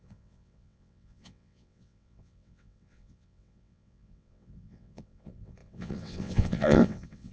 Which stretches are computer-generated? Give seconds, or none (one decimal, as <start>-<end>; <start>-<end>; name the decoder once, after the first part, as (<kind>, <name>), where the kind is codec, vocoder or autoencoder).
0.0-7.3 (vocoder, WaveNeXt)